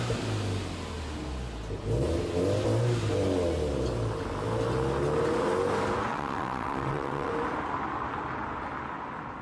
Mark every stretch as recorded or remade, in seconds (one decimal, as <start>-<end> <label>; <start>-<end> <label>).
0.0-6.1 recorded; 6.1-7.3 remade; 7.3-9.4 recorded